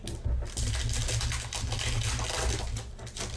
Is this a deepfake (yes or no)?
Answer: no